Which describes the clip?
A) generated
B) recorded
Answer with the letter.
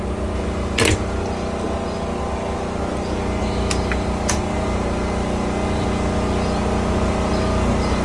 B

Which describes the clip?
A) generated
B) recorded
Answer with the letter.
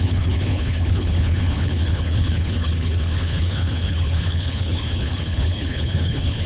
A